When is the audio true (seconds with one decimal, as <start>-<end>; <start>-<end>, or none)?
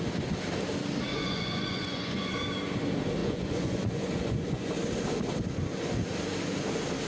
0.0-1.1; 2.3-3.2; 4.7-7.1